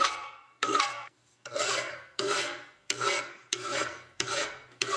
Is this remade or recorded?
remade